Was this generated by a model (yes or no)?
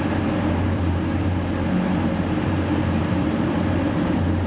yes